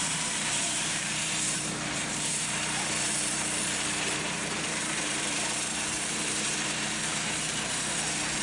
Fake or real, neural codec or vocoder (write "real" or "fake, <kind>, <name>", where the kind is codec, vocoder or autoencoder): fake, vocoder, BigVGAN v2